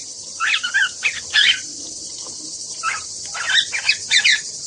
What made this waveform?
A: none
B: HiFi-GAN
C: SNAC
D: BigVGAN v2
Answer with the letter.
D